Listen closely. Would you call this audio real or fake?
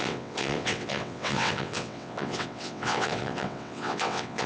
fake